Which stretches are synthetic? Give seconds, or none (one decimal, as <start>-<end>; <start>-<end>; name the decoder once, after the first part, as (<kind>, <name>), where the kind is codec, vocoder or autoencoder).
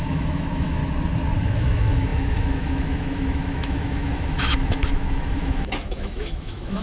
0.0-0.8 (autoencoder, DAC-VAE); 1.4-6.8